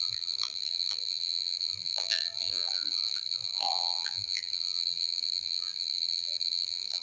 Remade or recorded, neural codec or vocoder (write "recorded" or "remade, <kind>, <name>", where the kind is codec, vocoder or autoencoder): remade, vocoder, BigVGAN v2